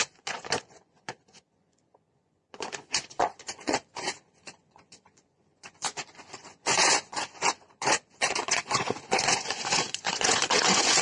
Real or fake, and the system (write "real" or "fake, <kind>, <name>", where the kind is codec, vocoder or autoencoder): fake, vocoder, Vocos